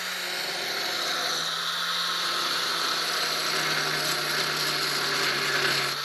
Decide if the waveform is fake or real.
real